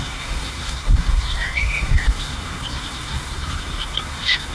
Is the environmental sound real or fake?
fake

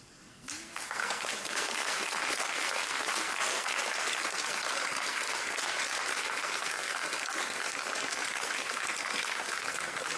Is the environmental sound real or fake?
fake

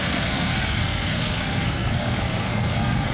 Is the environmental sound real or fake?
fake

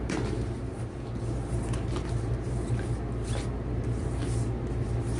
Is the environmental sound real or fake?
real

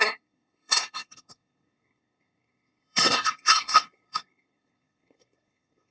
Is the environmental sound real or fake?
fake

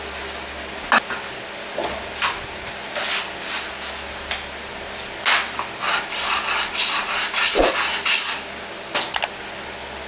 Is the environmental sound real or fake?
real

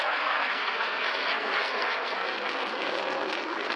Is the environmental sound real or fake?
fake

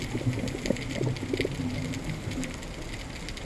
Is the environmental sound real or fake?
real